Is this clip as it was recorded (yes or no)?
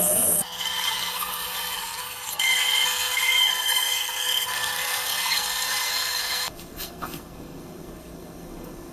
no